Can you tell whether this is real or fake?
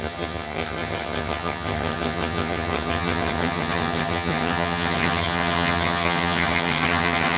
fake